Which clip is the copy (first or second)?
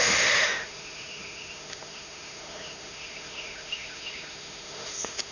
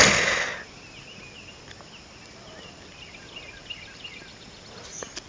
first